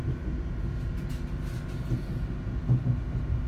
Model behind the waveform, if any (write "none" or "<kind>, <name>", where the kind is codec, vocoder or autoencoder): none